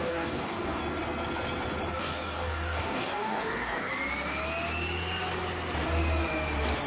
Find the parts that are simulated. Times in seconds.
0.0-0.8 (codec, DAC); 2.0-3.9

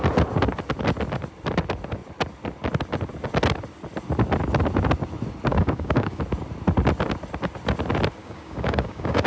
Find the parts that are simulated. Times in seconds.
5.5-6.2 (codec, DAC); 8.2-9.3